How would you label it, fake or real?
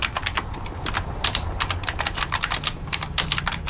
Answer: real